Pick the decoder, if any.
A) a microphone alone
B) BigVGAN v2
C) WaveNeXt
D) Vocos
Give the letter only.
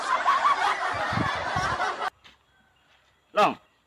A